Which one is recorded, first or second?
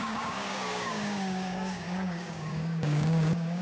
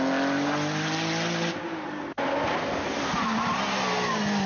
second